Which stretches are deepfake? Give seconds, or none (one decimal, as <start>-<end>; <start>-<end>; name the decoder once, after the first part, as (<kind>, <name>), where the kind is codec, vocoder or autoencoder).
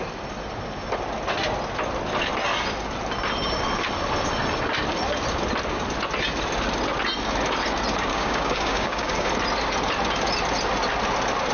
8.1-9.3 (codec, DAC)